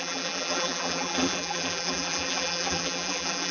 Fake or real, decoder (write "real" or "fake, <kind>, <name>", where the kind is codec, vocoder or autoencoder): fake, vocoder, BigVGAN v2